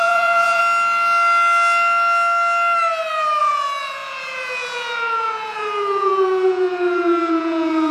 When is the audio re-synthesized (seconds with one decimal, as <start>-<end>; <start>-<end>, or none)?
0.0-0.6; 3.4-7.9